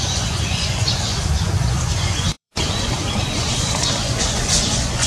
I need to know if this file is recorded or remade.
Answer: remade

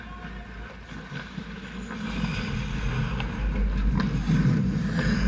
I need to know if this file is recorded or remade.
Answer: recorded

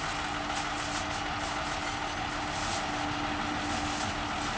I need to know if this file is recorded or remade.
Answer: recorded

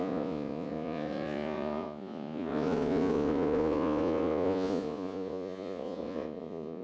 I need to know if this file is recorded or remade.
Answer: remade